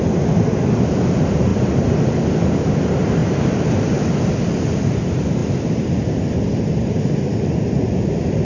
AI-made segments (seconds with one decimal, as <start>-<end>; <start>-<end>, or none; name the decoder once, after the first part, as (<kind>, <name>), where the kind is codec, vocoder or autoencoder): 0.0-1.5 (vocoder, BigVGAN v2); 2.3-8.4